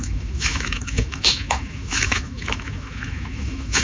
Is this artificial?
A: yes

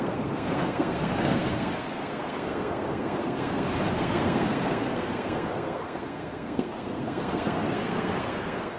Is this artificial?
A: yes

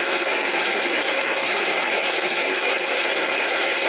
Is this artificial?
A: yes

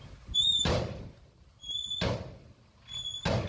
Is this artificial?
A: no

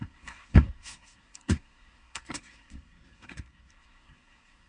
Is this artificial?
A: yes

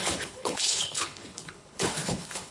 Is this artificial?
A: yes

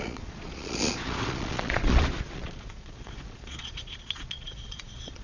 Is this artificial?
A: yes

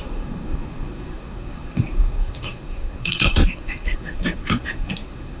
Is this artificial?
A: yes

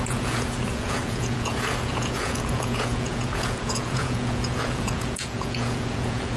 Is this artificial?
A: yes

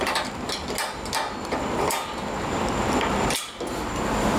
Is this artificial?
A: no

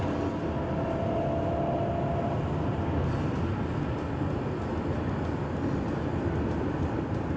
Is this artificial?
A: no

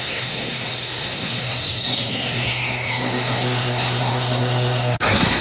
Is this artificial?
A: yes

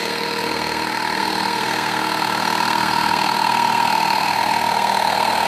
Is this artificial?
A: yes